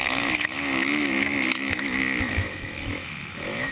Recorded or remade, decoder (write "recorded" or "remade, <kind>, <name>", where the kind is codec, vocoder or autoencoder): remade, autoencoder, DAC-VAE